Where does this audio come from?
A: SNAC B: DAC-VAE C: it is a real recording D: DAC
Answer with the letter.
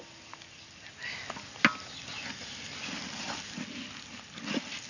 C